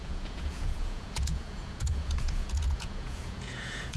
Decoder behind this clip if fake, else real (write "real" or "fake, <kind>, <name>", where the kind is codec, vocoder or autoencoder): fake, vocoder, Vocos